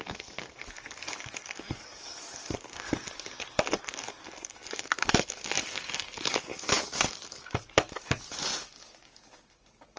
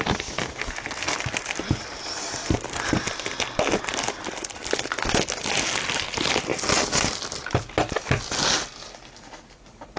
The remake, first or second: first